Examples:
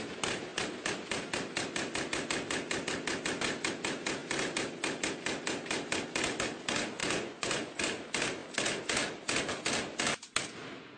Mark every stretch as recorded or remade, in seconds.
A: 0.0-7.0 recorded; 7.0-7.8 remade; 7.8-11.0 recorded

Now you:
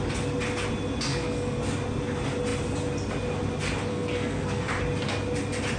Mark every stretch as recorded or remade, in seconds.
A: 0.0-1.1 recorded; 1.1-1.6 remade; 1.6-3.9 recorded; 3.9-4.7 remade; 4.7-5.8 recorded

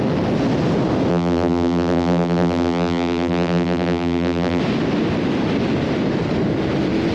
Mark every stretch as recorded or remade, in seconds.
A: 0.0-1.1 recorded; 1.1-4.6 remade; 4.6-7.1 recorded

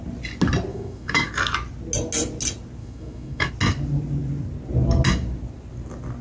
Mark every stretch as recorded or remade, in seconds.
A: 0.0-0.7 recorded; 0.7-1.3 remade; 1.3-2.8 recorded; 2.8-3.5 remade; 3.5-6.2 recorded